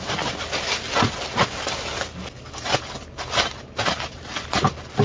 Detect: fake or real real